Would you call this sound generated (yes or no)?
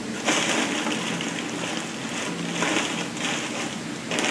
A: no